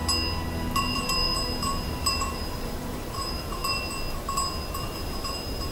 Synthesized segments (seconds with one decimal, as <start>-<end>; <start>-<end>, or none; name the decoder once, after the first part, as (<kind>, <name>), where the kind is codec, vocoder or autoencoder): 0.8-3.6 (vocoder, BigVGAN v2); 4.8-5.7

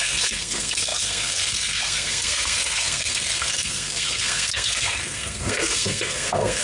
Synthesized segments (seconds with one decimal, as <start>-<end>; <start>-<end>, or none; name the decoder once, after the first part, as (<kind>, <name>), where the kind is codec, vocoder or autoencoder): 0.0-6.6 (codec, SNAC)

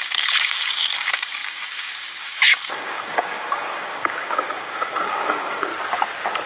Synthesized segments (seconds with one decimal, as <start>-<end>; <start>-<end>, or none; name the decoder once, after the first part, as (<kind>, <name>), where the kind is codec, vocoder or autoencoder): 0.0-5.7 (codec, DAC)

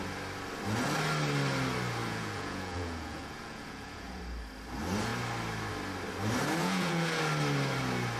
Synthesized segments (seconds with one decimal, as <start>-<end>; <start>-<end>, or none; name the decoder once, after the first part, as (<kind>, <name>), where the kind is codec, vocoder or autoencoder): 2.0-4.2 (vocoder, Vocos); 6.6-7.2